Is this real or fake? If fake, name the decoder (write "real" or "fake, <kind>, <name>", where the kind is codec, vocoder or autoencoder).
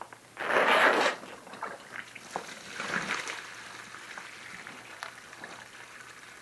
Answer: real